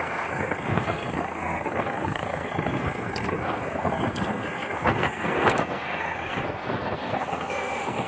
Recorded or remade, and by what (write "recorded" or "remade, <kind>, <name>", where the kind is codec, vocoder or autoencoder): remade, codec, SNAC